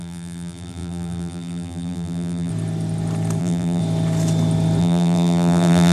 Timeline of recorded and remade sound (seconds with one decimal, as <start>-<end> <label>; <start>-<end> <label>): 0.0-2.5 remade; 2.5-3.4 recorded; 3.4-3.8 remade; 3.8-4.8 recorded; 4.8-5.9 remade